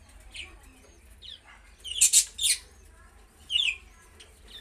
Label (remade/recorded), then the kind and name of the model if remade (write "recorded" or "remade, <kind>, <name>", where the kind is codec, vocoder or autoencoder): recorded